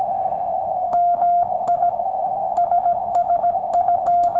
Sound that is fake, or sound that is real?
fake